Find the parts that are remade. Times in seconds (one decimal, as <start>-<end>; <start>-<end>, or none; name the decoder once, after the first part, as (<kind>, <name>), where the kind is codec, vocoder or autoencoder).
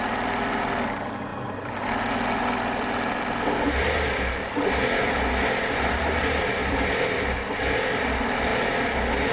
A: 4.4-5.0 (vocoder, BigVGAN v2); 6.6-7.5